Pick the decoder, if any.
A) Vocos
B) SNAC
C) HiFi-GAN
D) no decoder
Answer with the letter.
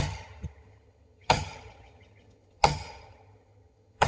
C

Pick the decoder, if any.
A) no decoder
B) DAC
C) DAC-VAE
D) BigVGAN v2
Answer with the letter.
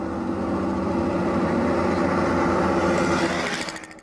A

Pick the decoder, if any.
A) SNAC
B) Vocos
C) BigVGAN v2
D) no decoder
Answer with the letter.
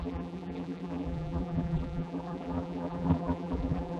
C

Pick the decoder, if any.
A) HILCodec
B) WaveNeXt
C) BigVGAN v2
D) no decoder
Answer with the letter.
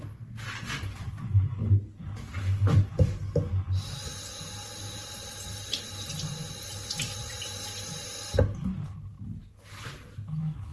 D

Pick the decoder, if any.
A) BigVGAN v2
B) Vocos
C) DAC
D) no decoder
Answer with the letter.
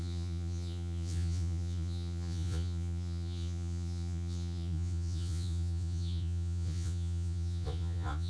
B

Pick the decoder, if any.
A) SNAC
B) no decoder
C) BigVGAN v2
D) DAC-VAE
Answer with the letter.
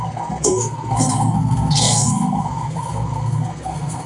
A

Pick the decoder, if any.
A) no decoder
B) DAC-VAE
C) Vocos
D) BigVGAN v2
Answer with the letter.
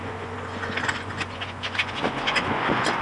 C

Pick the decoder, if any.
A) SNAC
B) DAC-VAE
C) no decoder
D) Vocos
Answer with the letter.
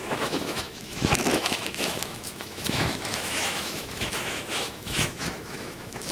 B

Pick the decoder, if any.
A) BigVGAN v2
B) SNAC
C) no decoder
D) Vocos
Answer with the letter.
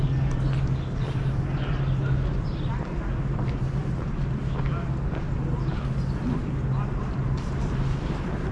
C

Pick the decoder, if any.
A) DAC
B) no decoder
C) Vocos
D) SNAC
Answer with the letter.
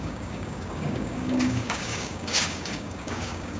A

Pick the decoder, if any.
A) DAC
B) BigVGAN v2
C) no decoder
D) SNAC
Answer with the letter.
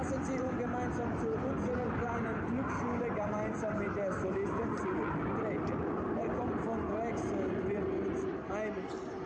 C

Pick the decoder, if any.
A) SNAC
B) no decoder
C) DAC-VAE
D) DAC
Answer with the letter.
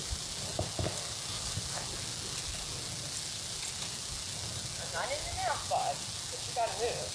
B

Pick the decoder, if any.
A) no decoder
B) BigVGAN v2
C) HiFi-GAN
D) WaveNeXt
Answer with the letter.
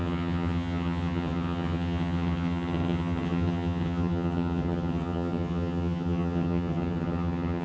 C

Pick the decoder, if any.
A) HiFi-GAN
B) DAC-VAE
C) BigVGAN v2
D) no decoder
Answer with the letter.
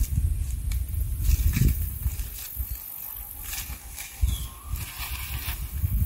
D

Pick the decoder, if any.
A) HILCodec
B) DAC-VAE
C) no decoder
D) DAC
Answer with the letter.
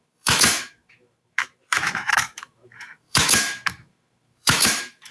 B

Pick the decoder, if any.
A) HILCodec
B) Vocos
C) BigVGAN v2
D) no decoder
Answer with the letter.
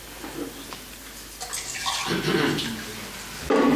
D